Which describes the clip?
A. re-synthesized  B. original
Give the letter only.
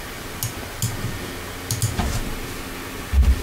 B